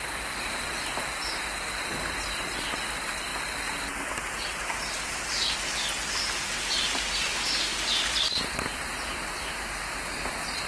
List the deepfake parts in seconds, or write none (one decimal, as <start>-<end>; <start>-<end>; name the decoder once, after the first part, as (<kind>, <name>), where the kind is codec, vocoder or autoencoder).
none